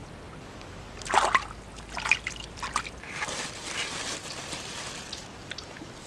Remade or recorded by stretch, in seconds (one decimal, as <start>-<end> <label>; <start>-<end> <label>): 0.0-2.3 recorded; 2.3-5.2 remade; 5.2-6.1 recorded